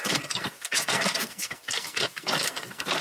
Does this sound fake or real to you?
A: fake